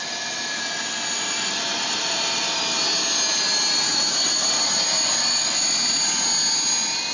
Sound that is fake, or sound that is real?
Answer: real